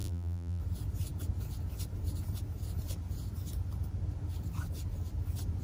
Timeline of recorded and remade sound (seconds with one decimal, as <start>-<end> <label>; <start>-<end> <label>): 0.0-0.6 remade; 0.6-5.6 recorded